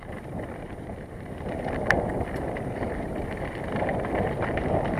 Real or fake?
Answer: real